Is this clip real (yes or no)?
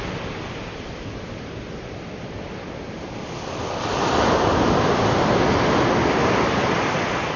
yes